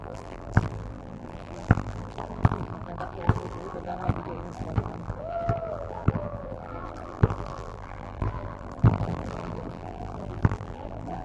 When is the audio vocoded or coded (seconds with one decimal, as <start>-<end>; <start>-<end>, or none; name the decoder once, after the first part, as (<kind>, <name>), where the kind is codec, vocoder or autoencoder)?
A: 0.0-11.2 (vocoder, BigVGAN v2)